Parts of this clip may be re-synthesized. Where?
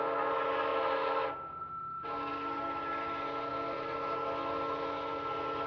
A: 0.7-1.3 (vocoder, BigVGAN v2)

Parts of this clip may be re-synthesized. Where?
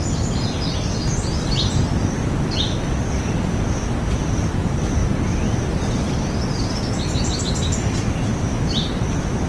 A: 0.0-2.2 (vocoder, BigVGAN v2); 3.1-5.0; 7.4-9.5